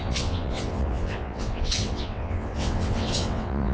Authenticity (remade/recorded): remade